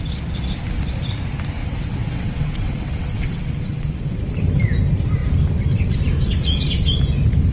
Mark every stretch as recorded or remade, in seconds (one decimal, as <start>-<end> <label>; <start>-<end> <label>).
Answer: 0.0-1.6 recorded; 1.6-4.2 remade; 4.2-7.5 recorded

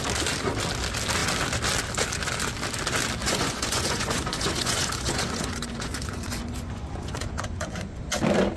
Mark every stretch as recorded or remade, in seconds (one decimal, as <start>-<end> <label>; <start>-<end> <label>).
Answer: 0.0-3.2 recorded; 3.2-8.0 remade; 8.0-8.6 recorded

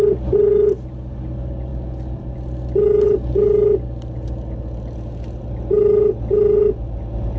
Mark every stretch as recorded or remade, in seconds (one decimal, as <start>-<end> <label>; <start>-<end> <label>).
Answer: 0.0-7.4 recorded

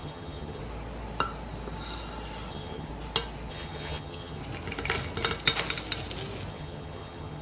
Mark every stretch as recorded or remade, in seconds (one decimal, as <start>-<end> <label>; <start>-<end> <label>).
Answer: 0.0-0.6 remade; 0.6-2.5 recorded; 2.5-2.9 remade; 2.9-3.5 recorded; 3.5-4.4 remade; 4.4-6.5 recorded; 6.5-7.4 remade

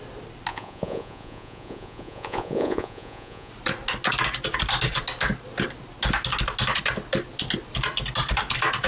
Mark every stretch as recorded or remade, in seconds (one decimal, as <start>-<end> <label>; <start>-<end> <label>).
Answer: 0.0-0.5 recorded; 0.5-3.5 remade; 3.5-8.9 recorded